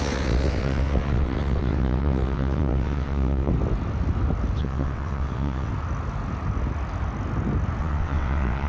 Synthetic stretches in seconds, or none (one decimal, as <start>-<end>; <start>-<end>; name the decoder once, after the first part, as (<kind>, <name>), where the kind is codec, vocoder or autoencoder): 0.0-3.5 (vocoder, WaveNeXt); 4.6-5.7; 7.8-8.7